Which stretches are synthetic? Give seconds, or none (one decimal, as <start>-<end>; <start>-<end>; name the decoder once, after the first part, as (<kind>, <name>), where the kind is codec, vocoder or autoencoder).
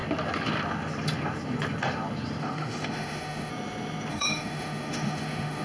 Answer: 2.4-3.5 (autoencoder, DAC-VAE); 4.1-5.6